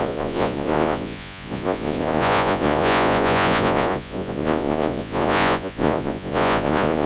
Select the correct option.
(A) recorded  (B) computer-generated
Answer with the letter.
B